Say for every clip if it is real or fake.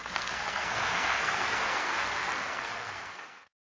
fake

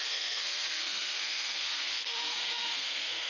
fake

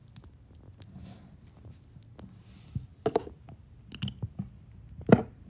real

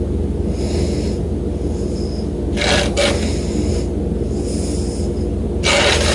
real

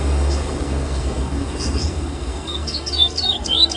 fake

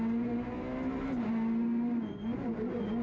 real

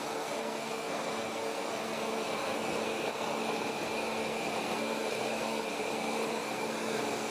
fake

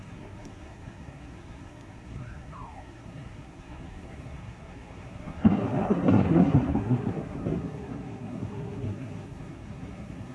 fake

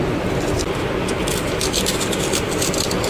real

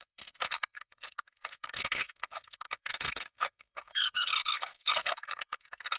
fake